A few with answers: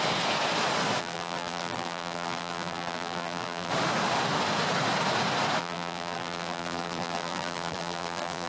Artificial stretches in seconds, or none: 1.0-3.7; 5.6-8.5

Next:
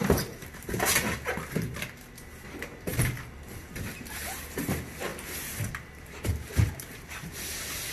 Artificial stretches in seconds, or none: 0.0-7.9

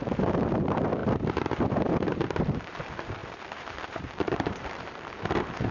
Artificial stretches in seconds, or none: 0.0-5.7

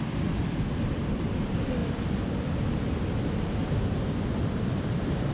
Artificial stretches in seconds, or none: 0.0-5.3

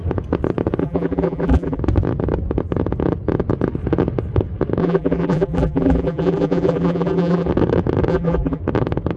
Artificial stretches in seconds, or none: 0.8-1.8; 4.8-7.5; 8.1-8.6

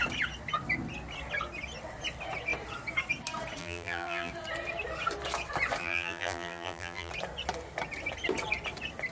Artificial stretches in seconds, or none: 3.6-4.3; 5.8-7.1